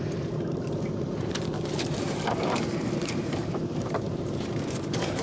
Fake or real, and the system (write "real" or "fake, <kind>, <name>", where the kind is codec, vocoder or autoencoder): fake, vocoder, BigVGAN v2